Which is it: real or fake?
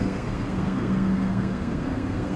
fake